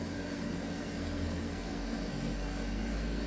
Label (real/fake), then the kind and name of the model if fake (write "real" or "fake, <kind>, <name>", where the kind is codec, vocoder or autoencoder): fake, codec, SNAC